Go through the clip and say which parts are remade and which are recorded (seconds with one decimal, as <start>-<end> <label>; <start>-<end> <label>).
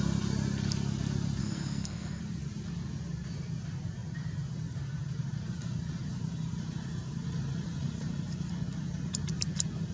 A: 0.0-1.4 recorded; 1.4-2.2 remade; 2.2-9.9 recorded